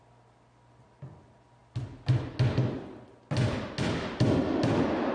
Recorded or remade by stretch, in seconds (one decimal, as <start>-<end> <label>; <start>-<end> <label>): 0.0-5.1 recorded